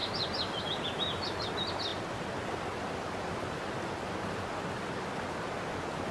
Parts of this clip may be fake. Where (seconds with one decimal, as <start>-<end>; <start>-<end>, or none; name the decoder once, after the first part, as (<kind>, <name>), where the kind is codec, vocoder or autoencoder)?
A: 1.9-5.6 (vocoder, BigVGAN v2)